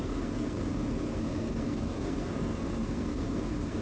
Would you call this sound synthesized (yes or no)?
yes